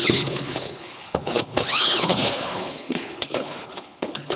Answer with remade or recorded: remade